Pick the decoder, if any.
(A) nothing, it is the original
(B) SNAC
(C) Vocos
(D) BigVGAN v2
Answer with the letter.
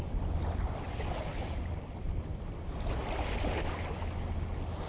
A